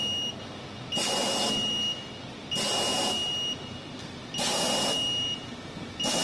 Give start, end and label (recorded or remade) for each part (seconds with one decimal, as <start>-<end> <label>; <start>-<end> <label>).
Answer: 0.0-6.2 recorded